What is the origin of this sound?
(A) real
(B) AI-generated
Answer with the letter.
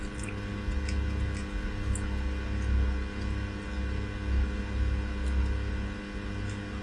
A